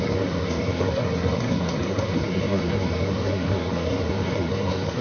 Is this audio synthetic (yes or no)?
yes